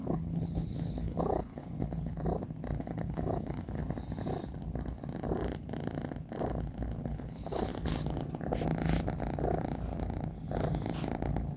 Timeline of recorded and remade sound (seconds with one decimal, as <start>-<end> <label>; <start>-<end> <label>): 0.0-2.1 remade; 2.1-2.8 recorded; 2.8-3.8 remade; 3.8-7.0 recorded; 7.0-7.7 remade; 7.7-11.6 recorded